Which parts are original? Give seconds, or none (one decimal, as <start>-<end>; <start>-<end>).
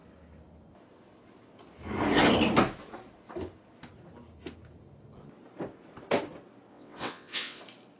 0.0-6.7; 7.6-8.0